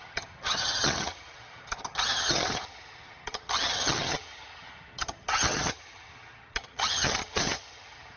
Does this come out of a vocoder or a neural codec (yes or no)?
yes